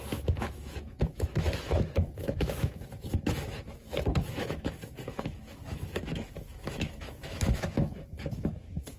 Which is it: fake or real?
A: fake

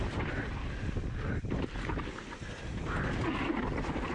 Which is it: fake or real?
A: real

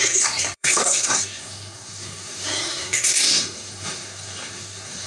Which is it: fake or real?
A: fake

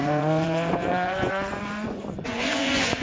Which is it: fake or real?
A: fake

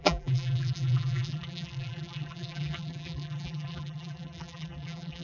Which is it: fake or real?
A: fake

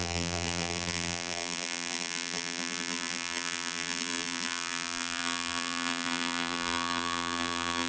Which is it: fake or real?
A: fake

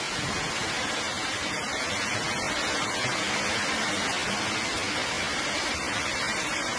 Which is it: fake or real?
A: real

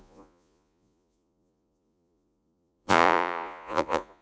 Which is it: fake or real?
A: fake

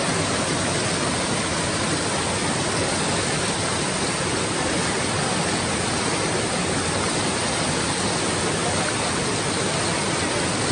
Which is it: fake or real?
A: real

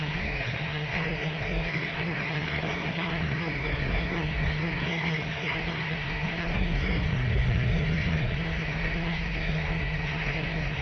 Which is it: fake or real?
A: fake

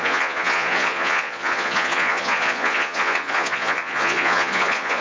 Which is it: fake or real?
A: fake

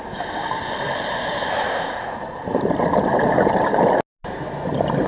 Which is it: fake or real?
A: real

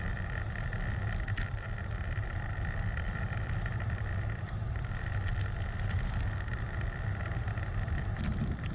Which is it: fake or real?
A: fake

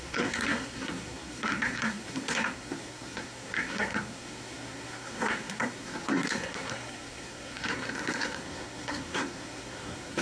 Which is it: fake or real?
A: fake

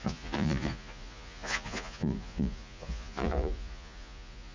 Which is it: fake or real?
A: fake